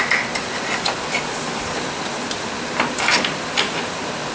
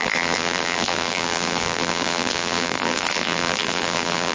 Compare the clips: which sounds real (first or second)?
first